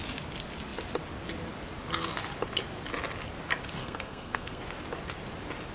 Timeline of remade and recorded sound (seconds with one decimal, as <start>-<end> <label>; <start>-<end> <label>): 0.0-3.8 recorded; 3.8-4.6 remade; 4.6-5.7 recorded